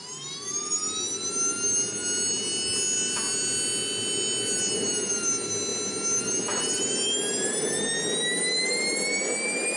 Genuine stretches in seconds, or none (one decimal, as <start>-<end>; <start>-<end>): 0.0-9.8